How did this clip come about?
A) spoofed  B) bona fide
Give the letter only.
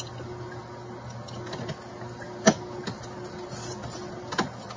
B